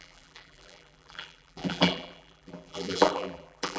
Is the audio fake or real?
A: fake